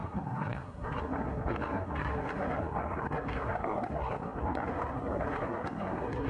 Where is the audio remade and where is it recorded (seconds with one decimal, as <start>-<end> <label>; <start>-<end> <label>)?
0.0-6.3 remade

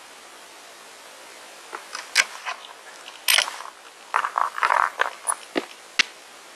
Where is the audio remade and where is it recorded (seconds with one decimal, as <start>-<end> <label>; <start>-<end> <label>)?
0.0-4.4 recorded; 4.4-5.1 remade; 5.1-6.6 recorded

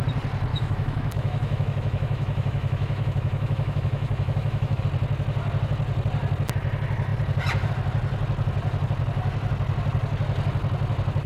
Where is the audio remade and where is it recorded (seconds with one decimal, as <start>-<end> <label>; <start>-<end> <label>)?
0.0-0.5 recorded; 0.5-4.8 remade; 4.8-11.3 recorded

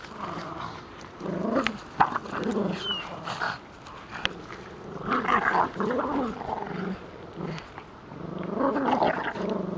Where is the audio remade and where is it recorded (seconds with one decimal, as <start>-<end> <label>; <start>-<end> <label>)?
0.0-0.4 recorded; 0.4-1.8 remade; 1.8-9.8 recorded

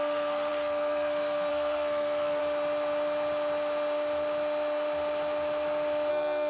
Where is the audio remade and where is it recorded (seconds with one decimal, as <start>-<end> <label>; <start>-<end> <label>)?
0.0-2.4 remade; 2.4-6.1 recorded; 6.1-6.5 remade

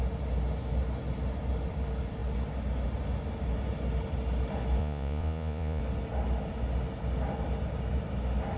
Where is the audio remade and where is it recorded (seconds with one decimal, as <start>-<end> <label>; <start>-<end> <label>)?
0.0-4.8 recorded; 4.8-5.8 remade; 5.8-8.6 recorded

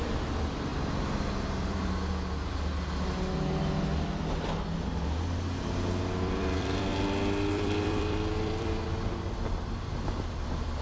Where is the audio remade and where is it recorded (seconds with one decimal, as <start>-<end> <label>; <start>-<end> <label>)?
0.0-0.7 remade; 0.7-6.0 recorded; 6.0-6.9 remade; 6.9-7.5 recorded; 7.5-10.8 remade

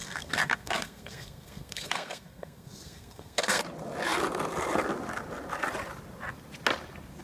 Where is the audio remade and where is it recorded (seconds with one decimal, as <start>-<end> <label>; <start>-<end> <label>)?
0.0-3.6 remade; 3.6-7.2 recorded